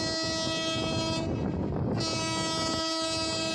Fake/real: real